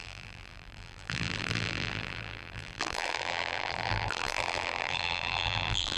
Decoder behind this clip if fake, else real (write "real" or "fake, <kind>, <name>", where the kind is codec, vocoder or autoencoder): fake, vocoder, BigVGAN v2